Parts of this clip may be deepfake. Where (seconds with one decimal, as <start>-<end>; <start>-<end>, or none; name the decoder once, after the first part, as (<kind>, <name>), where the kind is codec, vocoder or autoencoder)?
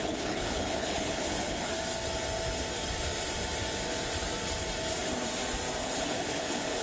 0.0-1.7 (codec, HILCodec); 5.8-6.8